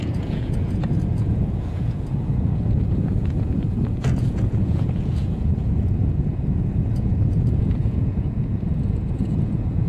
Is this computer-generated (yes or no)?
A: yes